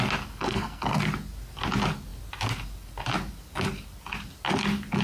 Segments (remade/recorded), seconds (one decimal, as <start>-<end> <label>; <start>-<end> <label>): 0.0-0.4 recorded; 0.4-1.0 remade; 1.0-5.0 recorded